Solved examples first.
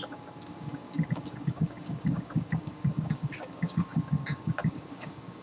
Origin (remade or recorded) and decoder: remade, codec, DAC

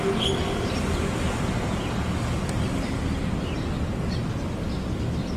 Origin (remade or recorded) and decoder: recorded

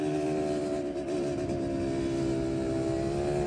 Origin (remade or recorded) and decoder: recorded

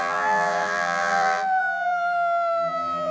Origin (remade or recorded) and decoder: remade, vocoder, BigVGAN v2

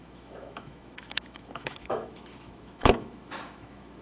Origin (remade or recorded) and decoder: remade, autoencoder, DAC-VAE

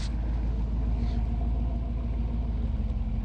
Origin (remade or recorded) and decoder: recorded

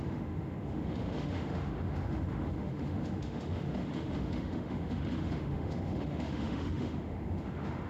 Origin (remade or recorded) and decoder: remade, autoencoder, DAC-VAE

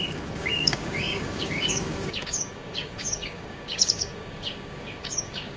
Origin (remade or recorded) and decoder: remade, codec, DAC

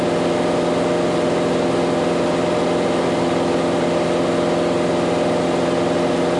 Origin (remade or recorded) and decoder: recorded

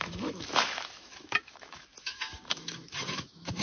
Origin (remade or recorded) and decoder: remade, autoencoder, DAC-VAE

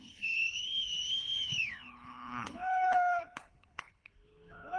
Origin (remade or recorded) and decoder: remade, codec, HILCodec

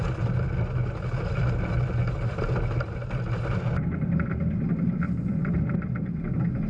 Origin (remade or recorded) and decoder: recorded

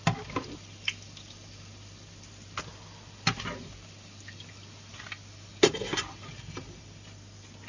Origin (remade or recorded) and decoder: recorded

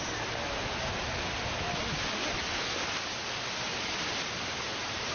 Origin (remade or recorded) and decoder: recorded